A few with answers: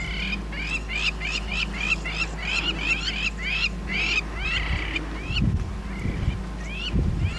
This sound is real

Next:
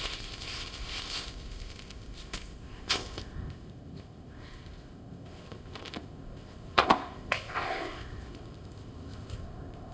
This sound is fake